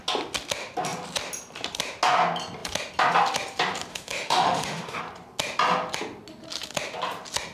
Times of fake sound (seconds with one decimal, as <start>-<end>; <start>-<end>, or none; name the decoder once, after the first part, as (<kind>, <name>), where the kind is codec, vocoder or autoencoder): 3.9-5.0 (autoencoder, DAC-VAE)